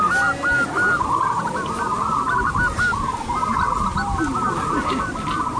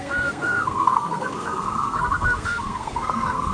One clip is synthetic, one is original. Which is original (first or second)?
first